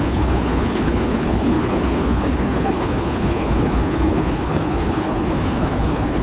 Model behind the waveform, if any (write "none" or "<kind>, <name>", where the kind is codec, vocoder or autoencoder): codec, HILCodec